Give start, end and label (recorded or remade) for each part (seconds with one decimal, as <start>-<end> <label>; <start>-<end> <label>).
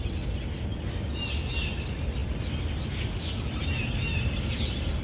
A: 0.0-5.0 recorded